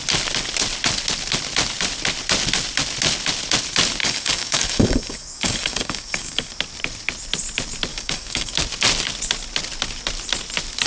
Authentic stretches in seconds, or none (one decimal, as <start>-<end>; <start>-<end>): 0.0-4.0; 6.5-7.9; 8.5-10.9